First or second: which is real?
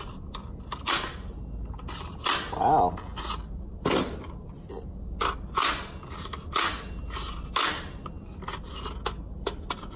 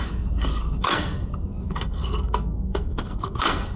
first